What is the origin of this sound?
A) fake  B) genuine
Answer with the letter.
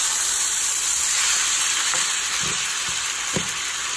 A